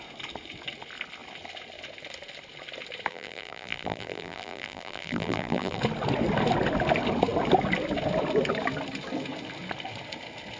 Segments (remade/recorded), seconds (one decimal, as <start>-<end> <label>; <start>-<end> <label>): 0.0-3.1 recorded; 3.1-5.8 remade; 5.8-10.6 recorded